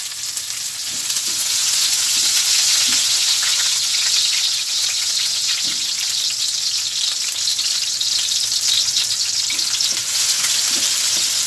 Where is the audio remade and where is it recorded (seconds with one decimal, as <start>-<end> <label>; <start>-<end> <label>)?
0.0-0.8 recorded; 0.8-5.9 remade; 5.9-10.0 recorded; 10.0-10.6 remade; 10.6-11.5 recorded